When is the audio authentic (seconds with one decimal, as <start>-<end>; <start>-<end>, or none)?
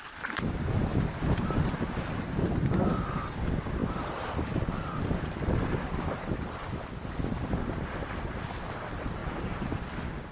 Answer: 0.9-1.6